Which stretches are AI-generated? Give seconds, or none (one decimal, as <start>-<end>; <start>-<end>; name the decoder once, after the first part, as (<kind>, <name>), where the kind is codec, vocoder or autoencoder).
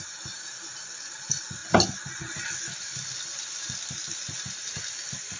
none